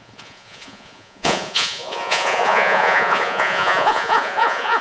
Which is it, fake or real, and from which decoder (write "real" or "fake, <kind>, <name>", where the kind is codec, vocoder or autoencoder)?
fake, vocoder, Vocos